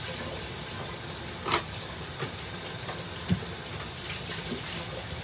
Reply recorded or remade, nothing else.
recorded